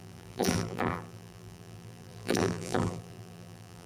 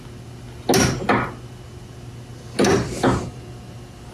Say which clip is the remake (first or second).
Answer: first